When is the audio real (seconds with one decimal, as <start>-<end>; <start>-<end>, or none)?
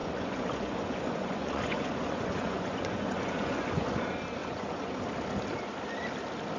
4.0-4.4; 5.0-6.6